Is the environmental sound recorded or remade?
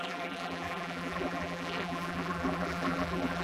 remade